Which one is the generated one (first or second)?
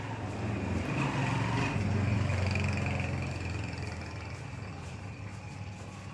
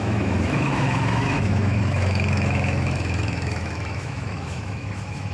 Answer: second